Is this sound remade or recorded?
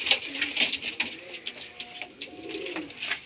remade